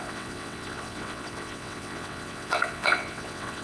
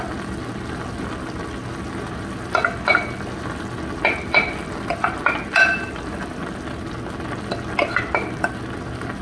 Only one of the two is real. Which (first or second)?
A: second